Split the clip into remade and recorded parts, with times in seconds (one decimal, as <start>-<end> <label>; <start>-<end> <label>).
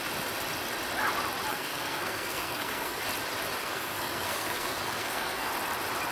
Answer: 0.0-1.5 recorded; 1.5-3.0 remade; 3.0-3.6 recorded; 3.6-5.5 remade; 5.5-6.1 recorded